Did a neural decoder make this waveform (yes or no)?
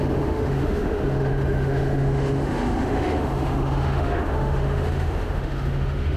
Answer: yes